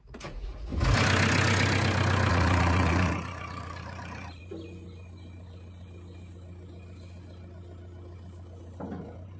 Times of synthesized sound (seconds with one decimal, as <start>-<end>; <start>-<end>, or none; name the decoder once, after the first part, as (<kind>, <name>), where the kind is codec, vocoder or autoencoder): 0.0-0.7 (vocoder, Vocos); 2.3-4.4